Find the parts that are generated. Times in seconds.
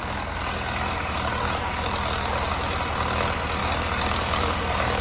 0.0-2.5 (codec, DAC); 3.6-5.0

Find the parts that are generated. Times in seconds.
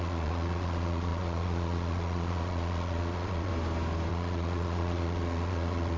0.0-3.5 (vocoder, Vocos); 4.1-6.0